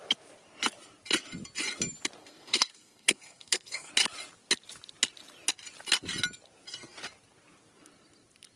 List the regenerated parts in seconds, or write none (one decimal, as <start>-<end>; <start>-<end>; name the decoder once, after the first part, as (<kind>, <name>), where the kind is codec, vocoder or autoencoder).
2.2-3.9 (codec, SNAC)